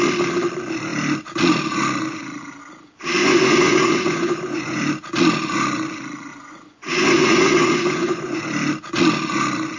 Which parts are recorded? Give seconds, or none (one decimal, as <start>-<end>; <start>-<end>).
0.0-3.2; 4.8-6.3; 8.4-9.8